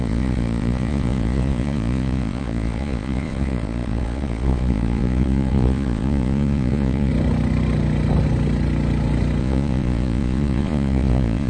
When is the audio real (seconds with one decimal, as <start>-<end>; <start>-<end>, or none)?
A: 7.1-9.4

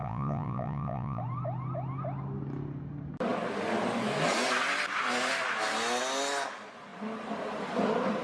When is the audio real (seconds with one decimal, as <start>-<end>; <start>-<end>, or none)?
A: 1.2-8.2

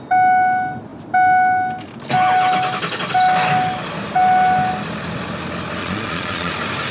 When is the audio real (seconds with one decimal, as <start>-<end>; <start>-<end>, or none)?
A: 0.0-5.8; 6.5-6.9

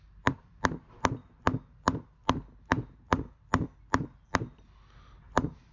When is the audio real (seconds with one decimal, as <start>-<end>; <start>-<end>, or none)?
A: 0.0-5.7

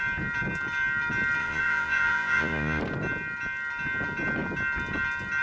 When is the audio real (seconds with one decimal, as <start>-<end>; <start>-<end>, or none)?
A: 0.0-1.4; 2.8-5.4